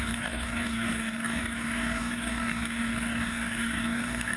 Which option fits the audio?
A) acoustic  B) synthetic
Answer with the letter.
B